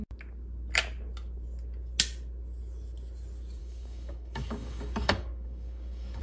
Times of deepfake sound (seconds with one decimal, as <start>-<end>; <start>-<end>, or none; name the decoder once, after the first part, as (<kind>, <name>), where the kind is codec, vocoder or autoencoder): 3.6-6.2 (codec, DAC)

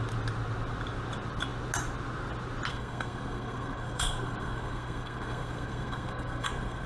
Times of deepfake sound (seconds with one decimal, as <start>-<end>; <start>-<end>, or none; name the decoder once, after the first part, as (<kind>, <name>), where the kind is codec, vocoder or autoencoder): 2.7-6.9 (codec, SNAC)

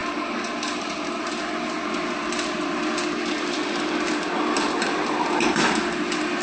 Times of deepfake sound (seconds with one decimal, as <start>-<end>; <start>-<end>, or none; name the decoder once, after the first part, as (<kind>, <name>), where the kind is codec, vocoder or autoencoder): none

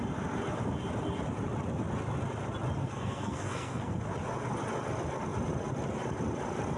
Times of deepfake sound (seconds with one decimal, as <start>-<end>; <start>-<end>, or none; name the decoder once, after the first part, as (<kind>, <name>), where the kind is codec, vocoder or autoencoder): 2.8-4.0 (codec, SNAC)

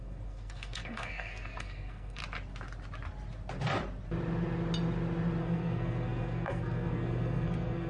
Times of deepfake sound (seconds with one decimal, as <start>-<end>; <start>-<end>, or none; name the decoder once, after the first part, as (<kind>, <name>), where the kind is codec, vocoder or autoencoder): 0.0-2.2 (codec, SNAC); 5.4-7.9

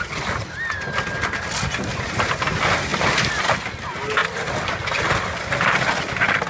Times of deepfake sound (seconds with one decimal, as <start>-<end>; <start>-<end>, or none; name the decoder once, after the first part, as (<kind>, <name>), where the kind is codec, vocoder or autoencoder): 2.9-3.4 (vocoder, BigVGAN v2); 4.2-5.6